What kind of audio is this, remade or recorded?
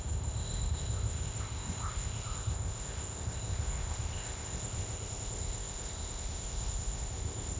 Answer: remade